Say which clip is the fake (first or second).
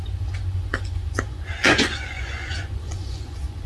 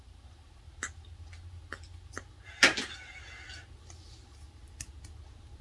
first